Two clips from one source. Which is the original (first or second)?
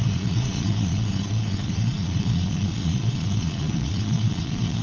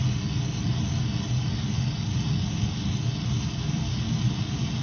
second